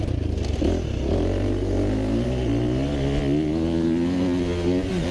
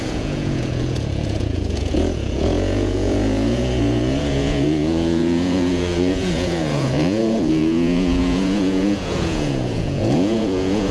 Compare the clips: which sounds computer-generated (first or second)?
second